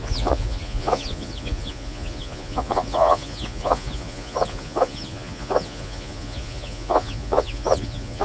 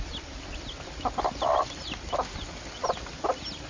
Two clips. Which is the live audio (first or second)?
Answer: second